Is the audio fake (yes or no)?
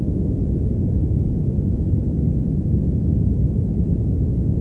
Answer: no